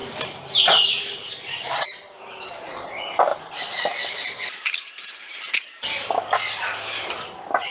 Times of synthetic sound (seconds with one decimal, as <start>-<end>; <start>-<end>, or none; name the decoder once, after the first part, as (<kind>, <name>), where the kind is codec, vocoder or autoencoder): 0.0-2.5 (vocoder, BigVGAN v2); 3.3-5.5